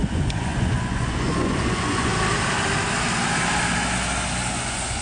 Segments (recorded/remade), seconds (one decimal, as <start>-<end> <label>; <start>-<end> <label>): 0.0-2.1 remade; 2.1-4.5 recorded; 4.5-5.0 remade